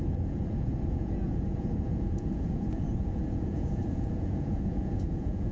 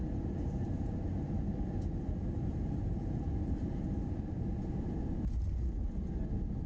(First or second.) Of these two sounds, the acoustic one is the second